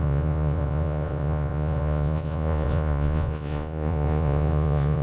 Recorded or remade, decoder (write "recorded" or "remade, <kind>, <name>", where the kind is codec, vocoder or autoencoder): remade, vocoder, Vocos